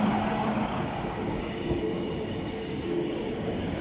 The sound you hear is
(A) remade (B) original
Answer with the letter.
A